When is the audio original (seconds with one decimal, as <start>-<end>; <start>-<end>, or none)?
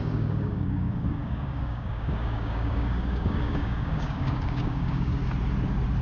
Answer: 5.1-6.0